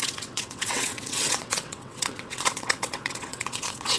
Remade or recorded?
remade